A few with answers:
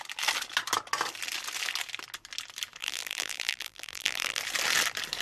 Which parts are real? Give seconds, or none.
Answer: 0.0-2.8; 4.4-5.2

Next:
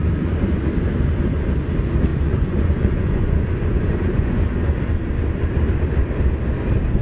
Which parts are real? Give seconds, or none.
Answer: 0.7-2.1; 4.4-7.0

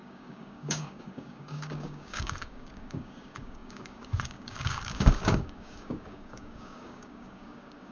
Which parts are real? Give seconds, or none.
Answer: none

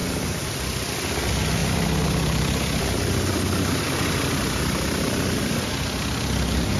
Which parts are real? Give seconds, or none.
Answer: 0.9-1.6; 5.7-6.8

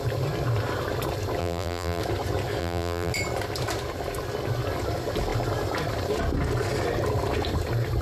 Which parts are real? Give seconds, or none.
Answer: 0.0-1.4; 2.0-2.6; 3.1-8.0

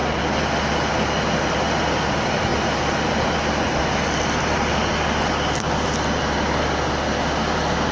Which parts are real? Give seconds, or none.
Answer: 0.0-7.9

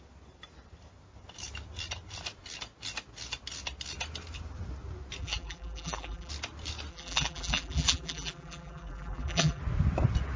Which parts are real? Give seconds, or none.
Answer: 0.0-5.2; 6.3-6.9; 9.6-10.4